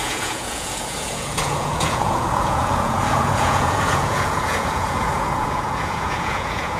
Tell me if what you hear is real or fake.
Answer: fake